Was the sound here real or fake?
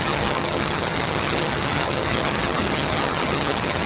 fake